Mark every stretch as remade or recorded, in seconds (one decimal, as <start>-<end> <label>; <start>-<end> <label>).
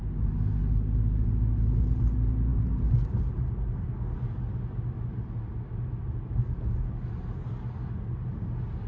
0.0-8.9 recorded